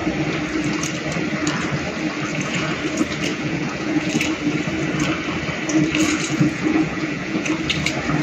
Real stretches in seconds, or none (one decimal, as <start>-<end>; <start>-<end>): 0.0-2.3; 2.8-3.3; 4.1-6.0; 7.5-8.2